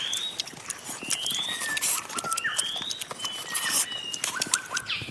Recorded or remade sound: recorded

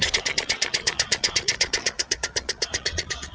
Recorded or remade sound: remade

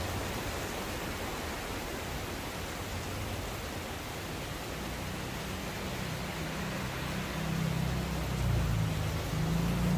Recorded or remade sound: recorded